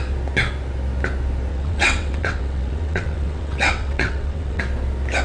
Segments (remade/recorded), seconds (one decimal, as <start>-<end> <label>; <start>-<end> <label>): 0.0-1.5 recorded; 1.5-4.6 remade; 4.6-5.2 recorded

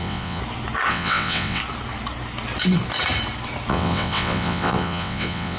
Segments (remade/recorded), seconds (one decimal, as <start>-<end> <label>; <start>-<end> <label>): 0.0-0.4 remade; 0.4-0.9 recorded; 0.9-1.6 remade; 1.6-3.7 recorded; 3.7-5.6 remade

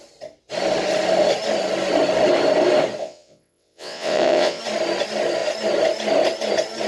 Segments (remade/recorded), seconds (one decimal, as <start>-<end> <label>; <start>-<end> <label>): 0.0-3.0 recorded; 3.0-4.6 remade; 4.6-6.9 recorded

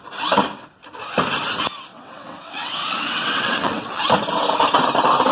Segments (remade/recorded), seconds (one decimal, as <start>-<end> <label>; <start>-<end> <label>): 0.0-1.9 recorded; 1.9-4.0 remade; 4.0-5.3 recorded

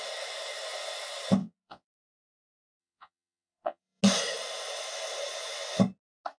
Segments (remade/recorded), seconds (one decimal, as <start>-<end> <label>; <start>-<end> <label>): 0.0-1.4 recorded; 1.4-2.0 remade; 2.0-2.8 recorded; 2.8-4.0 remade; 4.0-6.4 recorded